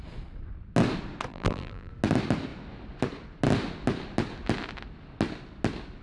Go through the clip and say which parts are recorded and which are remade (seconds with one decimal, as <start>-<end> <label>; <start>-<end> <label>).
0.0-1.3 recorded; 1.3-1.9 remade; 1.9-6.0 recorded